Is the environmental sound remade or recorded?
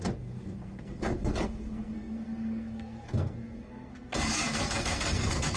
remade